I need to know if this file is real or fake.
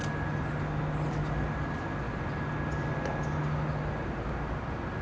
real